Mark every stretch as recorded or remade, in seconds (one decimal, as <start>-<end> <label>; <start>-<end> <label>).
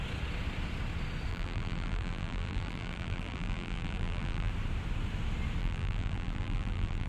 0.0-1.3 recorded; 1.3-4.5 remade; 4.5-5.6 recorded; 5.6-7.1 remade